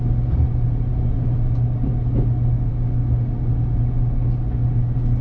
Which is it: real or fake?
real